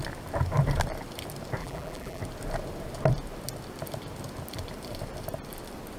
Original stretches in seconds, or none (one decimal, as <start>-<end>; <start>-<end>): 0.0-1.6; 2.2-6.0